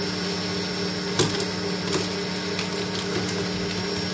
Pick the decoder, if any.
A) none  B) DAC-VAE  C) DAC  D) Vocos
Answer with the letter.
A